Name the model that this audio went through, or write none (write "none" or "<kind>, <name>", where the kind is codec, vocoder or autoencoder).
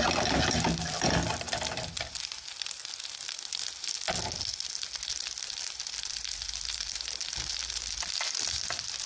none